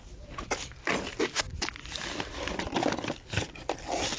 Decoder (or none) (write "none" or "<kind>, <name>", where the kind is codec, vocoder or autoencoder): none